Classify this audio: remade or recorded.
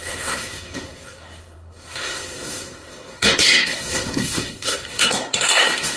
remade